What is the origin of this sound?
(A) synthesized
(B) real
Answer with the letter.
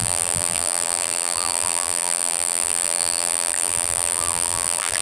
A